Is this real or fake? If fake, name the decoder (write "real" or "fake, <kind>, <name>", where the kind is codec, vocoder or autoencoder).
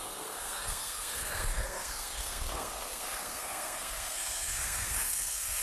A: fake, codec, SNAC